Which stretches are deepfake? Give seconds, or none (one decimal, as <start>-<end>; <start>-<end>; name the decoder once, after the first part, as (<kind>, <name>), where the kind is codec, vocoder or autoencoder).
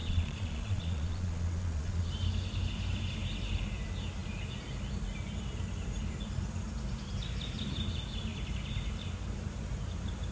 0.0-2.1 (vocoder, Vocos)